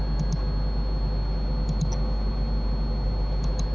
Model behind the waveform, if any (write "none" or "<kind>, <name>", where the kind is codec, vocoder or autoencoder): none